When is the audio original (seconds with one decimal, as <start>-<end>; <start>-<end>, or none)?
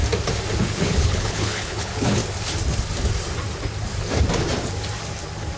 0.0-0.6; 2.2-5.6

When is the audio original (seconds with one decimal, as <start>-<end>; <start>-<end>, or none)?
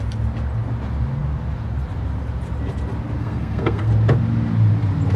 0.0-3.2; 3.9-5.2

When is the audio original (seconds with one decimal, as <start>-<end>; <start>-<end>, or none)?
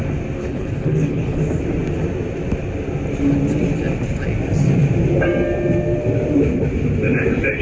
0.0-0.4; 1.4-7.6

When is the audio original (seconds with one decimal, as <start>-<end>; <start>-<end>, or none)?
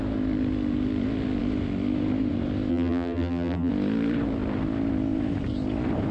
0.0-2.7; 3.7-6.1